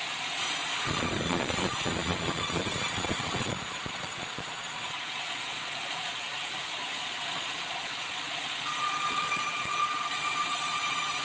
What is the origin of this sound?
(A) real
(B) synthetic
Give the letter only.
B